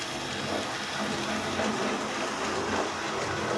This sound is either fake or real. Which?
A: real